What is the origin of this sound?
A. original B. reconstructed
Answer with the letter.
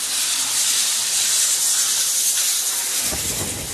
A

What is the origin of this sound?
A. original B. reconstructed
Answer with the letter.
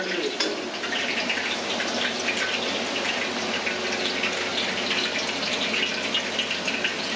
A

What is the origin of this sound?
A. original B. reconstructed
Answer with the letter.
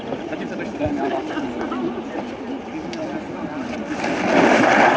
A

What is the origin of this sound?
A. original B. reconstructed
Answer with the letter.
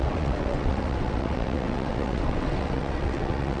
B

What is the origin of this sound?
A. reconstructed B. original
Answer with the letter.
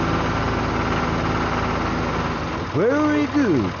B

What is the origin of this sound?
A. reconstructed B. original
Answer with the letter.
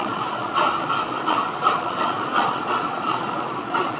A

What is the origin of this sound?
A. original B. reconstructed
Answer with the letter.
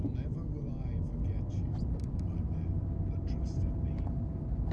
A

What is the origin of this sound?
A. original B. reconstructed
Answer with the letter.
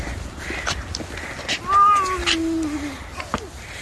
A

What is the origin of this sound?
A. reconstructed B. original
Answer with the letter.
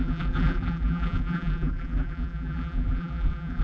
A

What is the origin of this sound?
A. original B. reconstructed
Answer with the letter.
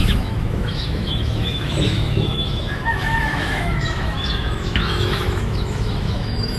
B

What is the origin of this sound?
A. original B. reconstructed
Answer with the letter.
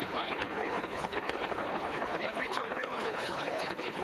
B